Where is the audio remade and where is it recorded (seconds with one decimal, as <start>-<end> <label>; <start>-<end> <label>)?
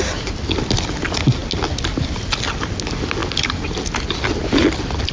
0.0-5.1 recorded